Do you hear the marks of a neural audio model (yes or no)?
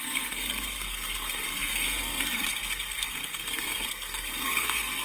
yes